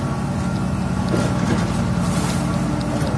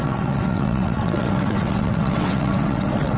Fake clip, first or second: second